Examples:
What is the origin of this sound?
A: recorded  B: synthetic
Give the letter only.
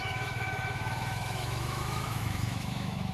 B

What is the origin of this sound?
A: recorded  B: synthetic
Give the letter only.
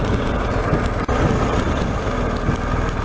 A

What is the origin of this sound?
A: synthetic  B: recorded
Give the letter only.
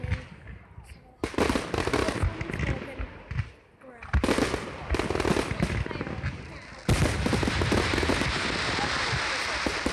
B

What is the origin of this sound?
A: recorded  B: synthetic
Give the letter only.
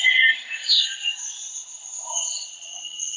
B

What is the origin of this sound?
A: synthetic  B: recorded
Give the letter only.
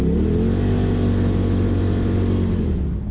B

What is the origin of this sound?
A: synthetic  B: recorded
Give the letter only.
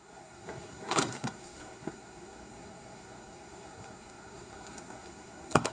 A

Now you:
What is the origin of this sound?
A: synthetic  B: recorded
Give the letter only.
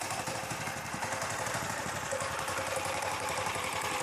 A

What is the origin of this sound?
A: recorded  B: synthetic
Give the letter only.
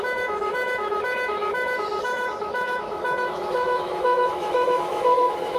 B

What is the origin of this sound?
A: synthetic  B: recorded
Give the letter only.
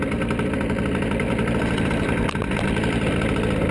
B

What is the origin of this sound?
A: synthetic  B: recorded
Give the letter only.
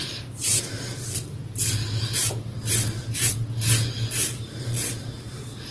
B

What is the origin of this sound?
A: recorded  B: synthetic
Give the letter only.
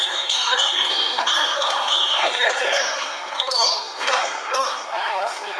B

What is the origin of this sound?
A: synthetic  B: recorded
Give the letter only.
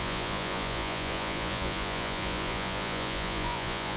A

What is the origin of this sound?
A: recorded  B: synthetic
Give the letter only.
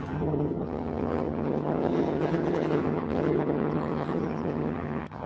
B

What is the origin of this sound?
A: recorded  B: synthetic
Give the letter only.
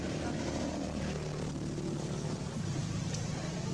A